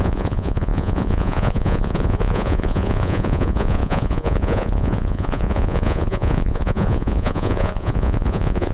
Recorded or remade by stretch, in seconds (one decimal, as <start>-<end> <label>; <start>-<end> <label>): 0.0-8.7 remade